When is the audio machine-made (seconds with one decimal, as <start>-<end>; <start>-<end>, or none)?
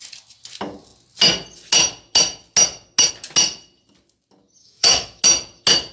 4.6-5.2